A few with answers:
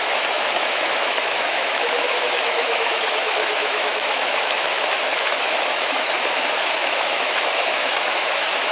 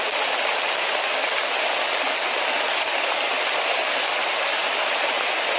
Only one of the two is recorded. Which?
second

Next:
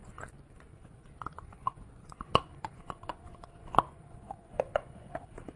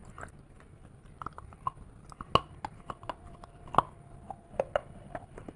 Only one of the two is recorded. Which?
second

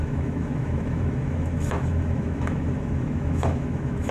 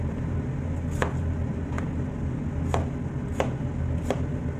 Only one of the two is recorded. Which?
second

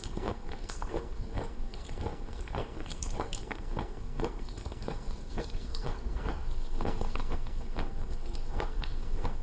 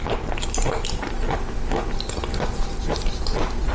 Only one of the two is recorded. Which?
second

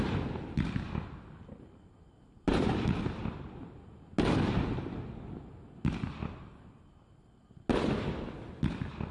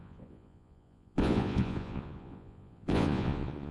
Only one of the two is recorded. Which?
first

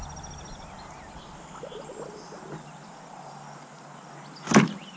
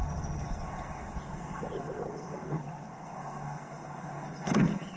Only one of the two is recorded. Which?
first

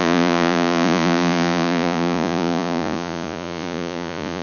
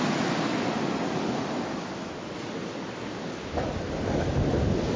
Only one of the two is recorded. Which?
second